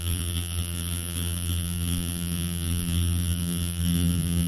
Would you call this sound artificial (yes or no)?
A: yes